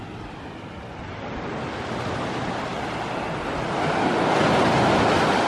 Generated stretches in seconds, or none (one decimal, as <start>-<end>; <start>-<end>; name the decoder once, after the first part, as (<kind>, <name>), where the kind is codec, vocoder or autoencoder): none